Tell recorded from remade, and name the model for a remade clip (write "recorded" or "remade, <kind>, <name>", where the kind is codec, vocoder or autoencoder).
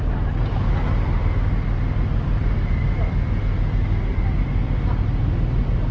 recorded